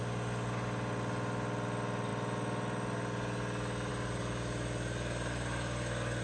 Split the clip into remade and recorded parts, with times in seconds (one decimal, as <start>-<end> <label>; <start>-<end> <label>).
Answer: 0.0-6.2 recorded